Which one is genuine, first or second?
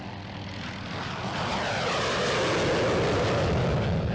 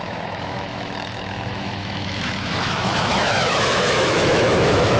first